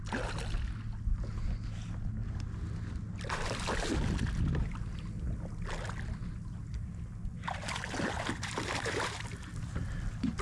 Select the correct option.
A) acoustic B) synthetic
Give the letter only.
A